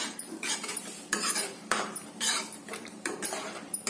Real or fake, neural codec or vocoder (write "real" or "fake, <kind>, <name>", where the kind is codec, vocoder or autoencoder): fake, vocoder, BigVGAN v2